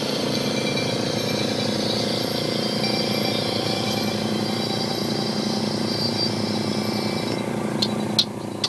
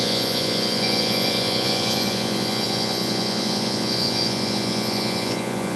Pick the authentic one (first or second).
first